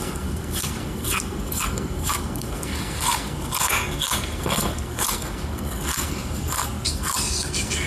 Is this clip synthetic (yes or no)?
yes